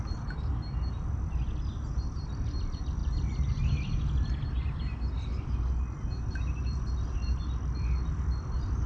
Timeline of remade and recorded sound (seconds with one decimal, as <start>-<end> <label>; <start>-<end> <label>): 0.0-8.9 recorded